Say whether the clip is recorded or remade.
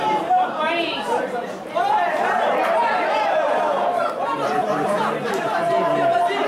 remade